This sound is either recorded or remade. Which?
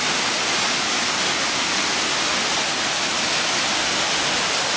recorded